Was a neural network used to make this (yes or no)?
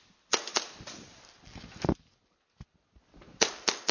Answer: no